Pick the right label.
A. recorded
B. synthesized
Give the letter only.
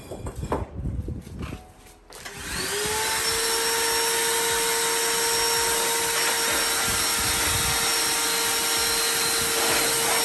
A